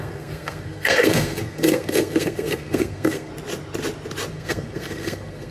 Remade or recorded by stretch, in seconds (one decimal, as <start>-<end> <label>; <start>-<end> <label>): 0.0-3.3 remade; 3.3-4.3 recorded; 4.3-5.5 remade